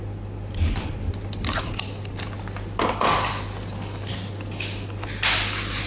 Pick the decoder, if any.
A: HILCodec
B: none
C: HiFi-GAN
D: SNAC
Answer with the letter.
B